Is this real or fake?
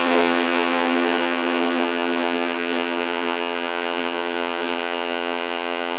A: fake